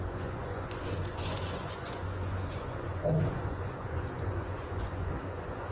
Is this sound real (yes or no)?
no